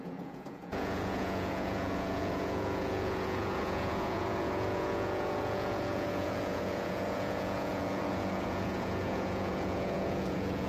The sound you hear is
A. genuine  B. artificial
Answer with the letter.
B